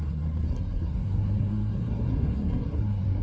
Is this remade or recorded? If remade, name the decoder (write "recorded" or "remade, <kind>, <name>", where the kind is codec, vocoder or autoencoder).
remade, codec, SNAC